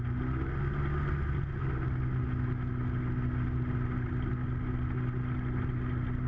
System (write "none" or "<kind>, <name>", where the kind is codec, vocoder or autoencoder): none